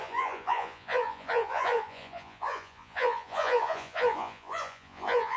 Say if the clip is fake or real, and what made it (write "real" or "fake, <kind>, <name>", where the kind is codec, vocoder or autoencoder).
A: fake, vocoder, Vocos